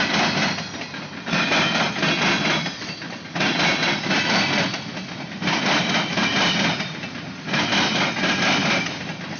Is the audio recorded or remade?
recorded